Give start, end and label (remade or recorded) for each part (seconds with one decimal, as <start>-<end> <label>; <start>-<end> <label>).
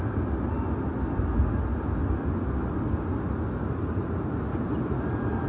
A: 0.0-5.5 recorded